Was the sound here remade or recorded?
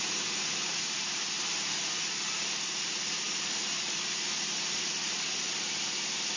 recorded